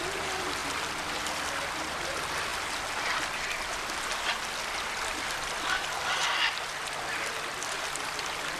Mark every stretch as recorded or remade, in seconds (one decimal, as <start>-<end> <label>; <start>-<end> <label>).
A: 0.0-8.6 recorded